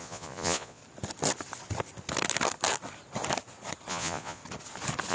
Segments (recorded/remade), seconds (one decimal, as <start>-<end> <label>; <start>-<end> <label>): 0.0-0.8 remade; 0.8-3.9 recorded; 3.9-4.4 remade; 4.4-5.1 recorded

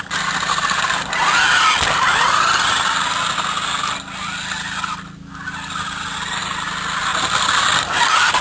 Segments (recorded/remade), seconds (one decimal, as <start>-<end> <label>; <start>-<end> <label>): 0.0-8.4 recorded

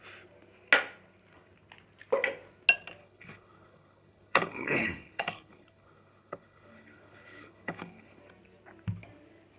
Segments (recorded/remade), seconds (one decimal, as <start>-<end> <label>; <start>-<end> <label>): 0.0-3.0 recorded; 3.0-8.2 remade; 8.2-9.6 recorded

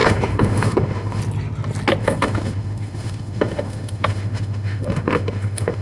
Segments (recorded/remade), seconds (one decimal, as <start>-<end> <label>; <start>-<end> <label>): 0.0-1.2 remade; 1.2-2.0 recorded; 2.0-5.8 remade

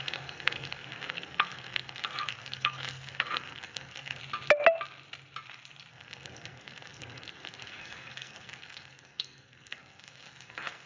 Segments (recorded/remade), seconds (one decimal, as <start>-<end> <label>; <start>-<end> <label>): 0.0-4.2 remade; 4.2-5.9 recorded; 5.9-10.9 remade